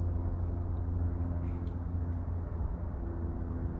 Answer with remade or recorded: recorded